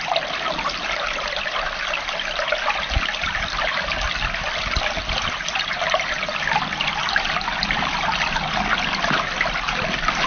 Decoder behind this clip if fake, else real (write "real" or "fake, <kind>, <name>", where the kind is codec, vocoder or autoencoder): real